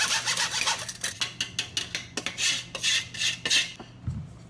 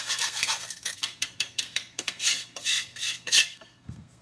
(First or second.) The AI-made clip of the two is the second